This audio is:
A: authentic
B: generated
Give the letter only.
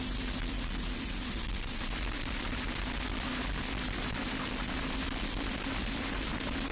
B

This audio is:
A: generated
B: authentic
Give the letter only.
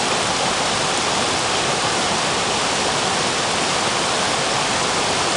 A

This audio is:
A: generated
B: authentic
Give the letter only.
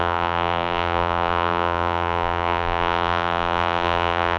A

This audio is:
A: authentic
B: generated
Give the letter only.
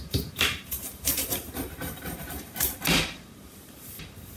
B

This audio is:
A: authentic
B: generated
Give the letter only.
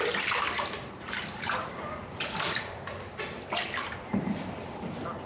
A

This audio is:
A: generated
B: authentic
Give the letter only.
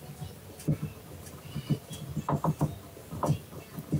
B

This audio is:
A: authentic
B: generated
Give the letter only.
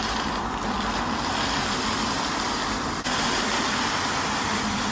B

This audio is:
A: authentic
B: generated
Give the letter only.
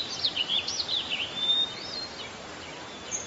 B